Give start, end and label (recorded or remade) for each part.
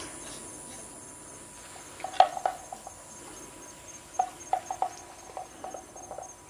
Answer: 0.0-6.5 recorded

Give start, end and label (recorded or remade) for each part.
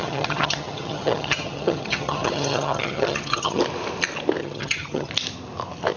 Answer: 0.0-3.6 remade; 3.6-4.4 recorded; 4.4-5.1 remade; 5.1-6.0 recorded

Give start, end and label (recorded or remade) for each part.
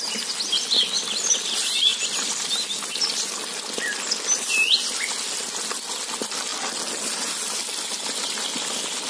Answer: 0.0-9.1 recorded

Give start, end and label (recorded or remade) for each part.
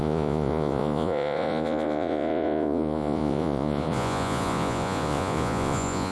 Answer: 0.0-6.1 remade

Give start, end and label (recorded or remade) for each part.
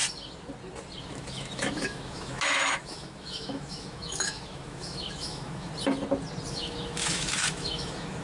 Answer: 0.0-1.0 recorded; 1.0-5.7 remade; 5.7-6.5 recorded; 6.5-8.2 remade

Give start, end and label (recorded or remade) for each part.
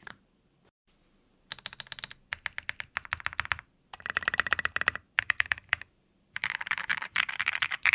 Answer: 0.0-0.8 remade; 0.8-5.2 recorded; 5.2-7.9 remade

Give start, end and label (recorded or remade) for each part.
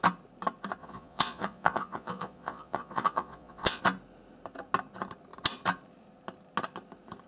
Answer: 0.0-0.8 recorded; 0.8-3.8 remade; 3.8-7.3 recorded